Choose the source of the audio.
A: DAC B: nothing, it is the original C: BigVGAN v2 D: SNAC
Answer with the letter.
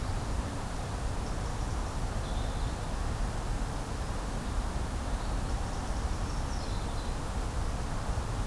B